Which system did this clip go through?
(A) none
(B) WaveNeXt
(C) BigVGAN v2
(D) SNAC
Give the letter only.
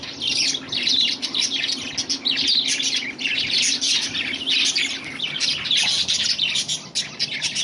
A